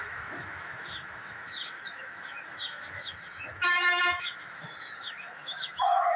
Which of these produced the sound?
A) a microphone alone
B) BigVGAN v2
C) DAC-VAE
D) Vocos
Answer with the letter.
C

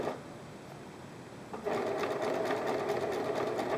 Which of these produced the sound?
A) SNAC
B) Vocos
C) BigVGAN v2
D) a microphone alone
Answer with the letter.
D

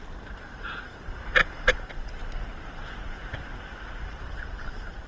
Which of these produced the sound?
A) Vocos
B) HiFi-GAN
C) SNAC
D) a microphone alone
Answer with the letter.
D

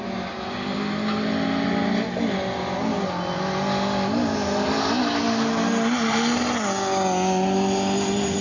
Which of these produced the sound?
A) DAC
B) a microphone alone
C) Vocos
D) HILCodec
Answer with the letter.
B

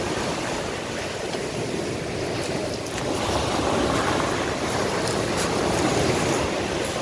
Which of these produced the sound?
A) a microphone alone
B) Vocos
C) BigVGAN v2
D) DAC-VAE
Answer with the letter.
A